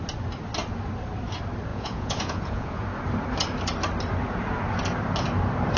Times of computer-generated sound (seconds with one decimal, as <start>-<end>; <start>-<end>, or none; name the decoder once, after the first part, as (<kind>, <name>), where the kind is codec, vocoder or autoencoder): 1.7-2.8 (vocoder, Vocos)